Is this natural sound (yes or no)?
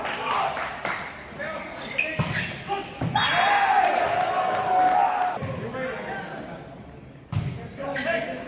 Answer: yes